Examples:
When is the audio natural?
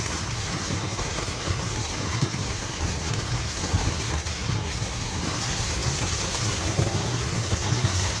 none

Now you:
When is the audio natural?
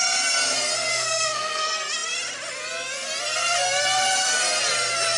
0.0-0.9; 1.6-5.2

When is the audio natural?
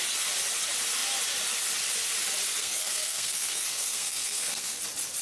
0.0-2.6; 4.8-5.2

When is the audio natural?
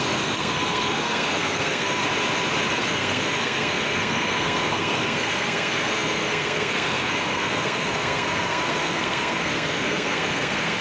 2.0-2.7